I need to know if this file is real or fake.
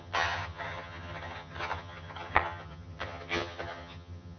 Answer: fake